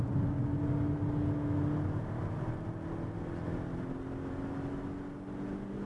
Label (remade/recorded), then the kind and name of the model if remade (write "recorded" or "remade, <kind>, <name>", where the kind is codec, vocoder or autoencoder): recorded